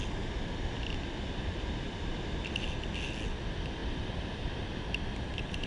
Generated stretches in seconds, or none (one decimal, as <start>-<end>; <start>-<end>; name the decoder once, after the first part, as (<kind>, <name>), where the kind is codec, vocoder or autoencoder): none